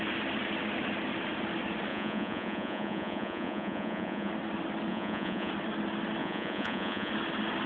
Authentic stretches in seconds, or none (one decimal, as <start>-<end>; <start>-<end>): 0.0-1.9; 4.3-4.9; 5.5-6.2; 7.1-7.7